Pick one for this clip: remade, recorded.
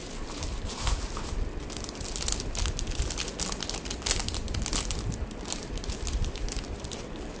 recorded